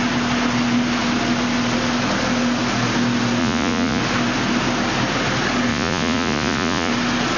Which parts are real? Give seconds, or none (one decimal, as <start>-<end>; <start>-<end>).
0.0-3.4; 4.0-5.7; 6.9-7.4